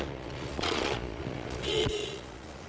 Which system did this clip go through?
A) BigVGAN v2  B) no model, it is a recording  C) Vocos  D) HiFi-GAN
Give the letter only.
C